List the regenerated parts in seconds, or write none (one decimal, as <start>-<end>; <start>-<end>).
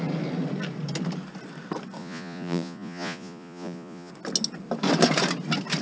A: 2.0-4.1